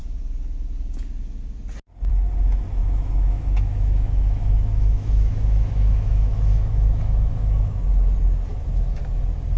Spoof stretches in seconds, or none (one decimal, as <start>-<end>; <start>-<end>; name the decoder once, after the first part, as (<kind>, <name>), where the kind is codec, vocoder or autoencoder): 2.8-7.9 (autoencoder, DAC-VAE); 8.5-9.0